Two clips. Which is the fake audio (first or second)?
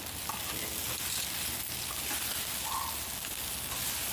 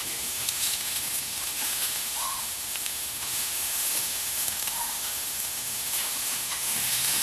second